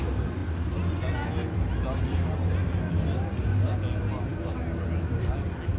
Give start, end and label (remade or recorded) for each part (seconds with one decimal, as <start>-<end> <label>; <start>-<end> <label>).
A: 0.0-5.8 recorded